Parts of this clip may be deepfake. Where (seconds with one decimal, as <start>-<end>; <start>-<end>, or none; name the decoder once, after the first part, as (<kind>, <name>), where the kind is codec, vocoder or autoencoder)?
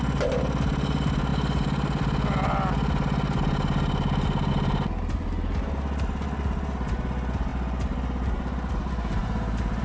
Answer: none